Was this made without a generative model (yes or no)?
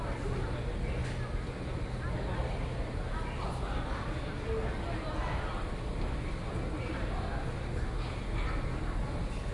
yes